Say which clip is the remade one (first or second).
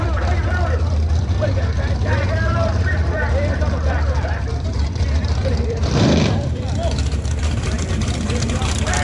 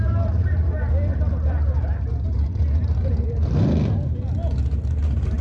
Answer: first